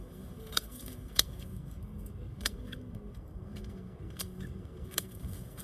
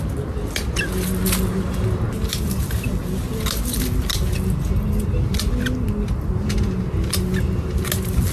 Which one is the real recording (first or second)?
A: second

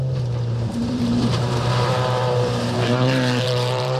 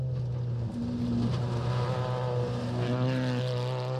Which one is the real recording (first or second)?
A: second